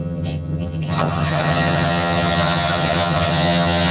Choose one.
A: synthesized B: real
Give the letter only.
A